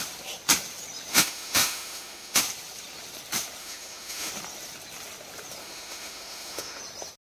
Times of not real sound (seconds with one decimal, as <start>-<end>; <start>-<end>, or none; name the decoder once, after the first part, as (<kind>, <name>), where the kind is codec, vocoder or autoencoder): 1.1-2.4 (autoencoder, DAC-VAE); 3.6-4.3; 5.6-6.8

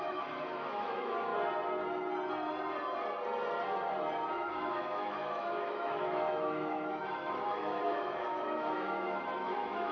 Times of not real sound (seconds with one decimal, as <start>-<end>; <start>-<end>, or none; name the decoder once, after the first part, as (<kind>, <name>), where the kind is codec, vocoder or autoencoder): 0.0-1.3 (autoencoder, DAC-VAE); 4.3-9.9

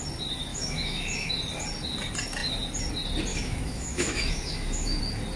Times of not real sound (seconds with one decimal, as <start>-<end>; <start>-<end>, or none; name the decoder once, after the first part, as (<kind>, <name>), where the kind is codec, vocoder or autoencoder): 0.5-1.3 (autoencoder, DAC-VAE); 3.3-5.0